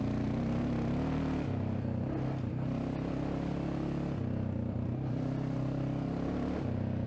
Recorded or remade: recorded